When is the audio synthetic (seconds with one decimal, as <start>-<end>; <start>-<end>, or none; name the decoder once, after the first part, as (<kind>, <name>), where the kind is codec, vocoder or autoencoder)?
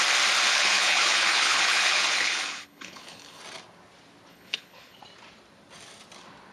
0.5-3.4 (codec, HILCodec); 4.3-5.0